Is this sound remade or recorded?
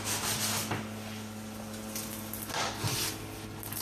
recorded